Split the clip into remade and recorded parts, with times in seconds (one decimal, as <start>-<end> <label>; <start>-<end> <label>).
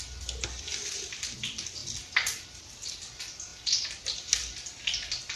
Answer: 0.0-5.4 recorded